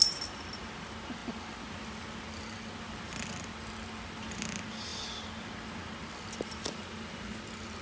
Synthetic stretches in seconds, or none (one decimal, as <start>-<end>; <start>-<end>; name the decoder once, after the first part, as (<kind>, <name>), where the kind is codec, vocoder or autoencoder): none